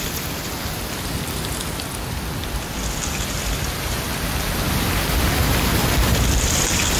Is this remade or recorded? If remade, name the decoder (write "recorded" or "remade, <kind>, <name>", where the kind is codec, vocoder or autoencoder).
recorded